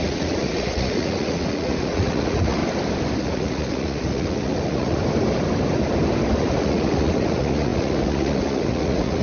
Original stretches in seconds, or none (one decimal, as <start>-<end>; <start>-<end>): 2.6-3.2; 5.0-6.4